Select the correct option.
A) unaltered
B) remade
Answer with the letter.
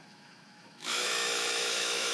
B